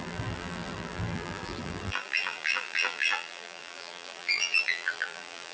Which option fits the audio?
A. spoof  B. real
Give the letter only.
A